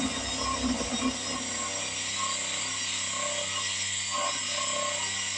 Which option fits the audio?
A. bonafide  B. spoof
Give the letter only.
A